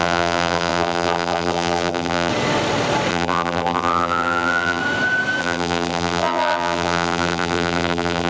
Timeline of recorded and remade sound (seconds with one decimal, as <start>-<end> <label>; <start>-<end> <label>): 0.0-2.3 remade; 2.3-3.1 recorded; 3.1-4.8 remade; 4.8-5.4 recorded; 5.4-8.3 remade